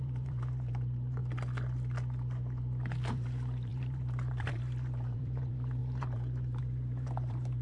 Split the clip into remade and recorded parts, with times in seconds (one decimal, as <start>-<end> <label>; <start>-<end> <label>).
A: 0.0-1.2 remade; 1.2-3.1 recorded; 3.1-7.6 remade